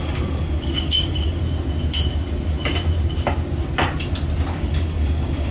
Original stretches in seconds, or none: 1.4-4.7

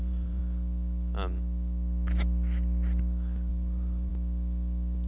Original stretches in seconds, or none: 0.4-3.5; 4.1-5.1